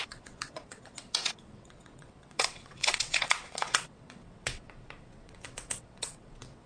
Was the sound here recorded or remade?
remade